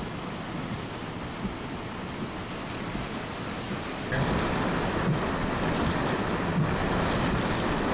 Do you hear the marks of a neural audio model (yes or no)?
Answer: no